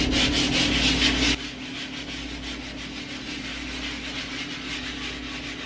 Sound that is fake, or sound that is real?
real